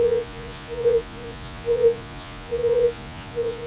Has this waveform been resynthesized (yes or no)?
yes